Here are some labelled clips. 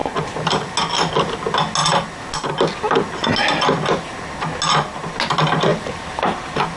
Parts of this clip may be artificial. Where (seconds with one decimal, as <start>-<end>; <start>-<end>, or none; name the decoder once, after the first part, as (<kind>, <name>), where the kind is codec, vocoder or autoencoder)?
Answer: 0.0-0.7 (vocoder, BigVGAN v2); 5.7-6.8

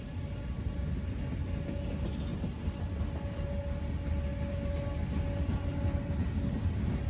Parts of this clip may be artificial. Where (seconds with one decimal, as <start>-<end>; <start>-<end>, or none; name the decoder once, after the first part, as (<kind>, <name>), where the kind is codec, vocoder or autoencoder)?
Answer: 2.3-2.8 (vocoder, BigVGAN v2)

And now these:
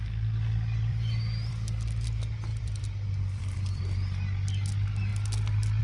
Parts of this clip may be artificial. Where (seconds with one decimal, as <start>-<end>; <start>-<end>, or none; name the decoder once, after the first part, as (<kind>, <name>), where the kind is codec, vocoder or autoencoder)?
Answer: 0.9-1.5 (vocoder, BigVGAN v2); 2.5-3.8

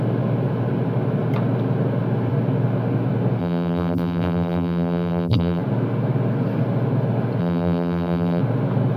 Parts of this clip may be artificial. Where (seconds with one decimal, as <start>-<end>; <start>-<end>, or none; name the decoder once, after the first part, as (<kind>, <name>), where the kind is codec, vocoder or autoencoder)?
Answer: 3.4-5.6 (vocoder, BigVGAN v2); 7.4-8.4